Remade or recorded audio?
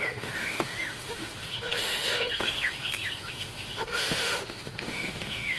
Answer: remade